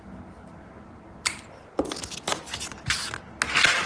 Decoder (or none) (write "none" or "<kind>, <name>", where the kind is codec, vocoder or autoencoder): none